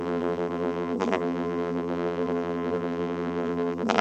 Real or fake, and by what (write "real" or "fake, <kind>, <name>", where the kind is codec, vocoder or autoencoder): fake, vocoder, BigVGAN v2